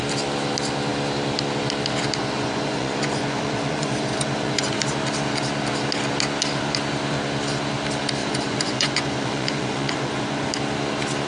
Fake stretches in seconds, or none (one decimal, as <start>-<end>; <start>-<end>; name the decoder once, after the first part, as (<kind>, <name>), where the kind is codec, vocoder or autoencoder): 2.2-4.8 (vocoder, Vocos); 8.2-10.5